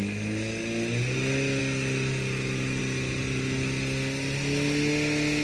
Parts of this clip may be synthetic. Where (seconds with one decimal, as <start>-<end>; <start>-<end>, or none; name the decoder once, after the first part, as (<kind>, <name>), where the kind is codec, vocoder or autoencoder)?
none